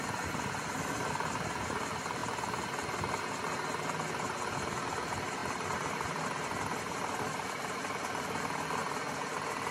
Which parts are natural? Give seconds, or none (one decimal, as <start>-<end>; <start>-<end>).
0.0-5.4; 7.0-9.7

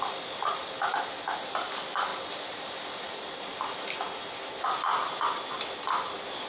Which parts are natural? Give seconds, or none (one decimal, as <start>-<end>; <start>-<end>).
0.0-6.5

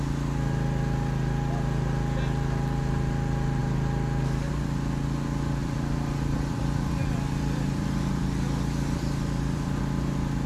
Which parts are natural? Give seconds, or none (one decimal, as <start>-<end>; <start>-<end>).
0.0-5.6; 9.8-10.5

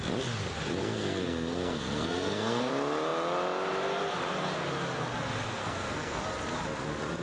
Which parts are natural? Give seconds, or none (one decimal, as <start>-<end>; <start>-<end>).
0.0-0.8; 2.7-5.6; 6.2-7.2

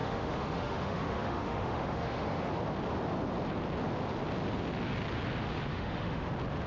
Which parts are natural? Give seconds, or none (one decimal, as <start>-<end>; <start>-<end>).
2.5-5.7; 6.3-6.7

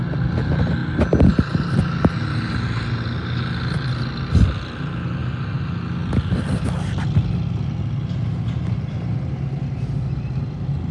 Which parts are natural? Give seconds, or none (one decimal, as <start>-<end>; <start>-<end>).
0.0-10.9